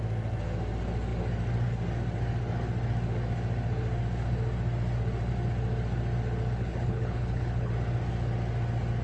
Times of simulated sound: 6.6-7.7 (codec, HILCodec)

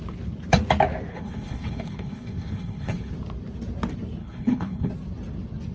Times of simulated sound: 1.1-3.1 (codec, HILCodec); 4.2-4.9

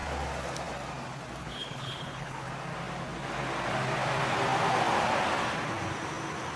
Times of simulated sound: 1.4-2.5 (codec, HILCodec)